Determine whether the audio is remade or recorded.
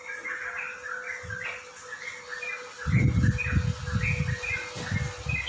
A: recorded